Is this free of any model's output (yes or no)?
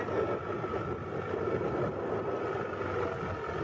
yes